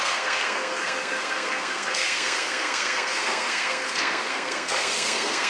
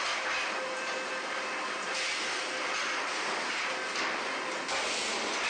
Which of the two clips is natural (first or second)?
second